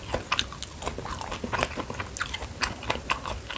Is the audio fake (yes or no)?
no